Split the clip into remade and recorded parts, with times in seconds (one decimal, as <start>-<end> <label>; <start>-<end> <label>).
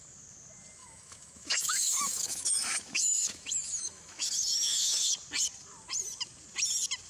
0.0-0.8 recorded; 0.8-5.1 remade; 5.1-7.1 recorded